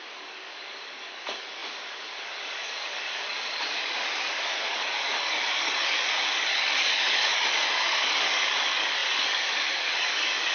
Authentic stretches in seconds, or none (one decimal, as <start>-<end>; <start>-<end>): none